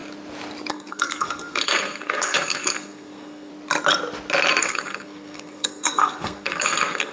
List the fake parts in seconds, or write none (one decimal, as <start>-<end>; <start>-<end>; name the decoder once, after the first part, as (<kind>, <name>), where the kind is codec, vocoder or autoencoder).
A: 0.7-3.5 (codec, SNAC); 4.6-7.1